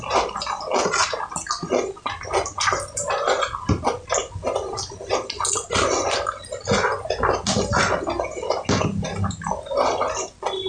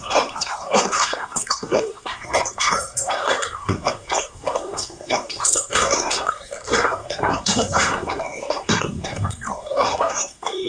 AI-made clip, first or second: second